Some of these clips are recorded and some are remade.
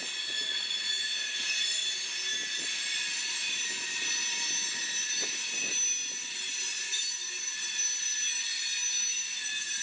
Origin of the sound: recorded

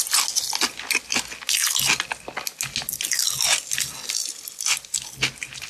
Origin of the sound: recorded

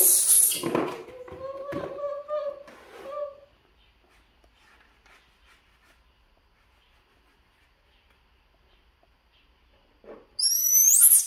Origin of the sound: recorded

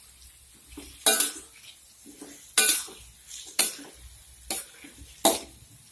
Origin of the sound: recorded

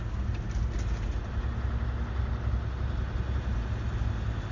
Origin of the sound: recorded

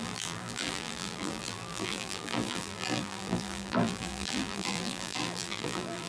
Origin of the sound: remade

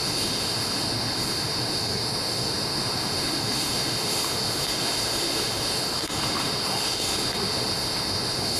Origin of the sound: remade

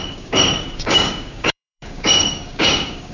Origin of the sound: remade